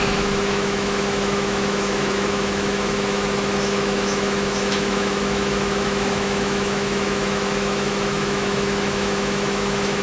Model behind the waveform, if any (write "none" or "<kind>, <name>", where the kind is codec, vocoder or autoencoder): autoencoder, DAC-VAE